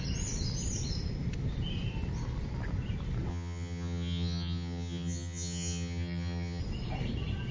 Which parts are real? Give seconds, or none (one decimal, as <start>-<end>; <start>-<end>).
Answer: 0.0-3.3; 6.6-7.5